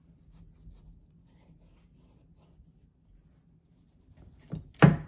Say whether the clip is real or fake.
real